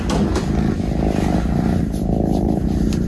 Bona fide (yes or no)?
yes